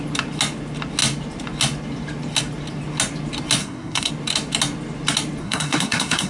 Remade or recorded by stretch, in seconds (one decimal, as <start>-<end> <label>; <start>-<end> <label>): 0.0-3.6 recorded; 3.6-4.1 remade; 4.1-5.4 recorded; 5.4-6.3 remade